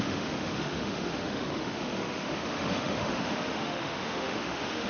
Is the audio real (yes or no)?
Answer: no